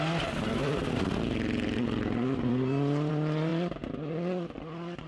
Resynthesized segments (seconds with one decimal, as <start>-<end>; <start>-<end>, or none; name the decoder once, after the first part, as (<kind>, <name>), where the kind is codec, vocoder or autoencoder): none